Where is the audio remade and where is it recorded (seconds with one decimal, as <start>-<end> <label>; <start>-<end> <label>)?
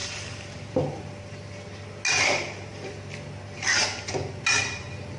0.0-5.2 recorded